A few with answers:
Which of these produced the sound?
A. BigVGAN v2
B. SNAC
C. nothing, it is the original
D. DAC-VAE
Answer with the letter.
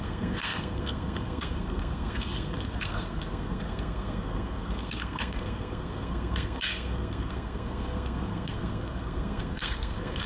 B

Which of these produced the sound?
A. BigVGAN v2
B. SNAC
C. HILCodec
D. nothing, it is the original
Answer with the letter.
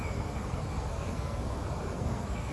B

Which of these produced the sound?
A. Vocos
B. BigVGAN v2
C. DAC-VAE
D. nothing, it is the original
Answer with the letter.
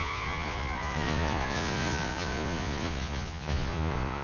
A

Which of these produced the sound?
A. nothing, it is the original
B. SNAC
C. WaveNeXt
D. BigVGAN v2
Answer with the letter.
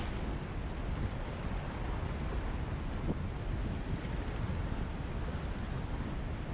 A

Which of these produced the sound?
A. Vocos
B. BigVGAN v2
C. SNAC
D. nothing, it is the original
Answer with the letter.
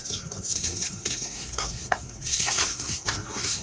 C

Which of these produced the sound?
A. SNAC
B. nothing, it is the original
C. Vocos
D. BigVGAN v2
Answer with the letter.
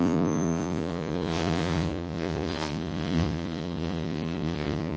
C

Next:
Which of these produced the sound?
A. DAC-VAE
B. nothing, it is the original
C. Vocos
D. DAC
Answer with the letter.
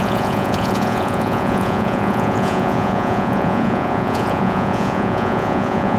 C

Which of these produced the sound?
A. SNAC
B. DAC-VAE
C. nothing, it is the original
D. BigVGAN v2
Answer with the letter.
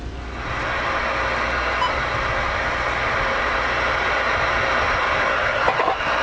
C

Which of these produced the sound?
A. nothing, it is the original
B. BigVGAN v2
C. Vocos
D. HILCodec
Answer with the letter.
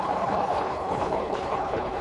D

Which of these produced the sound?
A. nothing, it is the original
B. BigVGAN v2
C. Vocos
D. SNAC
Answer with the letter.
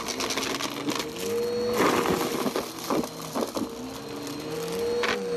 A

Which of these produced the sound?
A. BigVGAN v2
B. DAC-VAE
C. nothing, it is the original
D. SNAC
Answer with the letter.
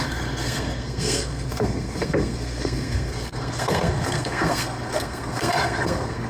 D